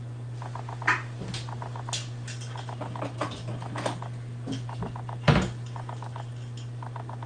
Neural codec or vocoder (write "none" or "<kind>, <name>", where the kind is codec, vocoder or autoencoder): none